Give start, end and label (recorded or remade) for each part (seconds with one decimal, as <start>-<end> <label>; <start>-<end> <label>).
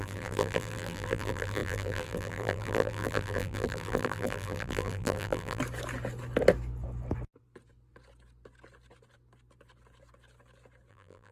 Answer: 0.0-5.6 remade; 5.6-10.9 recorded; 10.9-11.3 remade